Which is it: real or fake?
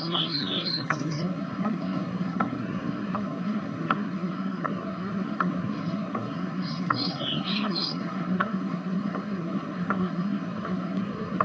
fake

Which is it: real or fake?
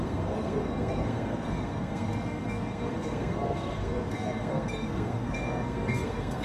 fake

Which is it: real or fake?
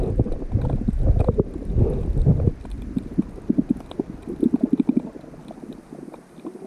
real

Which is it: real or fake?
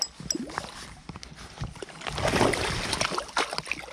real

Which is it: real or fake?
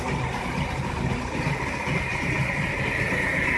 real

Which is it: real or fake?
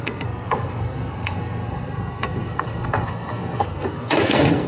fake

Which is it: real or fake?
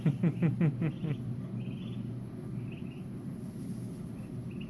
real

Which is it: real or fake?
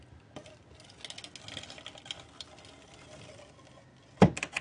real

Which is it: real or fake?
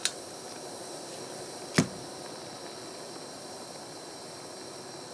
real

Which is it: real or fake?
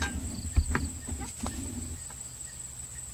real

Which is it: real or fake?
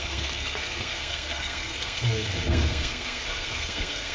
fake